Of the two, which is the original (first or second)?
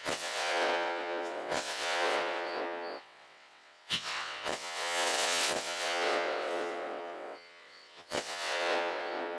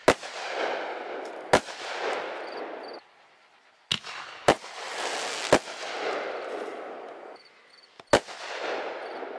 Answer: second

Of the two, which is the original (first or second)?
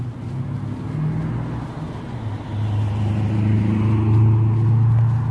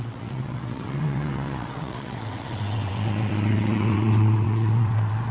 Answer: first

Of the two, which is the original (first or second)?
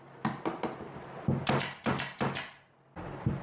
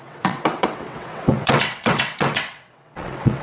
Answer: first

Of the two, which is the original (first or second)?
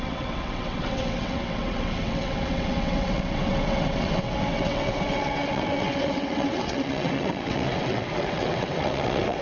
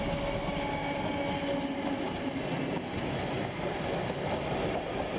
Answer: second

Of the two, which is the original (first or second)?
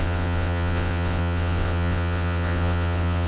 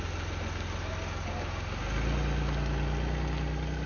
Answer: second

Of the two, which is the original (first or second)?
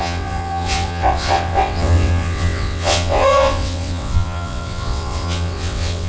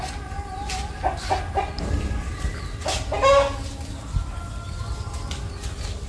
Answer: second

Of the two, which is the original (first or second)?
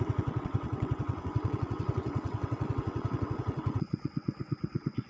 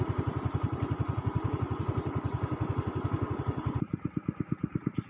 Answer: second